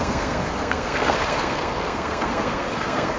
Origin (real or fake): fake